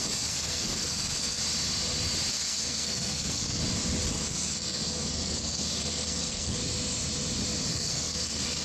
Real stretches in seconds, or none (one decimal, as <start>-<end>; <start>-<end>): 1.4-2.3; 3.6-4.1; 6.6-7.7